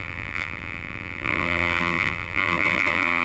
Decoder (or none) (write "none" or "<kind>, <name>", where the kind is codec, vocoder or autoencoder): vocoder, BigVGAN v2